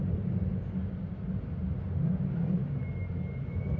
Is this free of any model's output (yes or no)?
yes